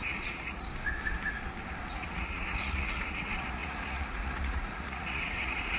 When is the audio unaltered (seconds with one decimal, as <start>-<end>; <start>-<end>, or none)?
0.7-1.9